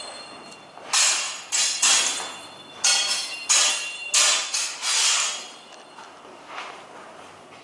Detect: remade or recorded recorded